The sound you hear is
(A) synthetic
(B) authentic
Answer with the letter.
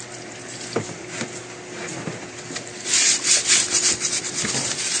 B